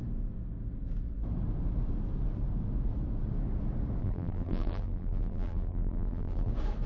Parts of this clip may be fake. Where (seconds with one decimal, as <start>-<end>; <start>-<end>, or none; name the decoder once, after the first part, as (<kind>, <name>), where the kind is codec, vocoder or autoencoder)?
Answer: 4.0-6.5 (vocoder, BigVGAN v2)